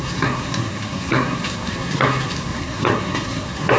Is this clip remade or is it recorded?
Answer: remade